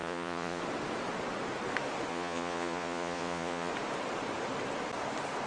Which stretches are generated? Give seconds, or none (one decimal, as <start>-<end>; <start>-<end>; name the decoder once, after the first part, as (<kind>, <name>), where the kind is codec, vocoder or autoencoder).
0.0-0.6 (vocoder, Vocos); 2.1-3.7